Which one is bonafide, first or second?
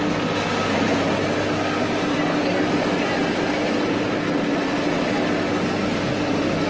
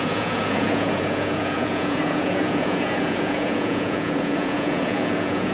first